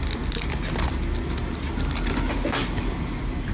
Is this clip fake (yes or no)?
no